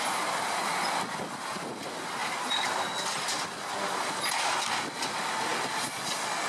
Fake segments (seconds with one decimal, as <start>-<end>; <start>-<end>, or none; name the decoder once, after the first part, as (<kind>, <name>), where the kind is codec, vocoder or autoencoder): none